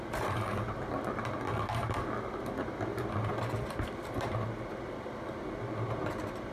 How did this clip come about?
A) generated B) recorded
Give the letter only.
B